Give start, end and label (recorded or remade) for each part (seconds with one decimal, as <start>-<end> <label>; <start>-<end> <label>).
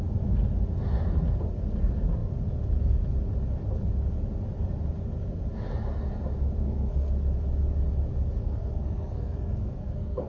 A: 0.0-6.6 recorded; 6.6-7.1 remade; 7.1-8.4 recorded; 8.4-10.3 remade